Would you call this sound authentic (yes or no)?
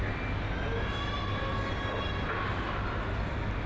yes